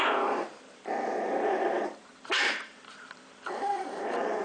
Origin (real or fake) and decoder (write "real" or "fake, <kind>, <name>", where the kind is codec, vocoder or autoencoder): fake, vocoder, BigVGAN v2